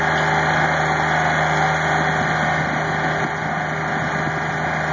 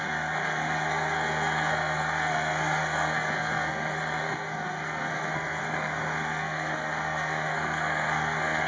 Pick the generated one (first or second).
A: second